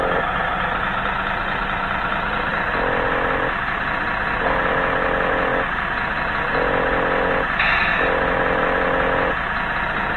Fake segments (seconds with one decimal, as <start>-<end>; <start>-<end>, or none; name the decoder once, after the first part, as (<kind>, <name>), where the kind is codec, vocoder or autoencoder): none